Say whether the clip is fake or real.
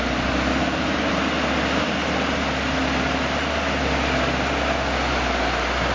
real